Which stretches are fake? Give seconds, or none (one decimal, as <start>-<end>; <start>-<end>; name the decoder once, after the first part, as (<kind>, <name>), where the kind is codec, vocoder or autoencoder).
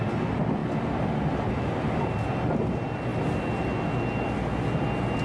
none